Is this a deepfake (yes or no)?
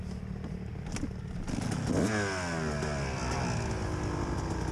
no